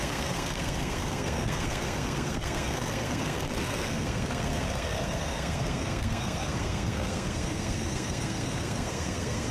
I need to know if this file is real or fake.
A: fake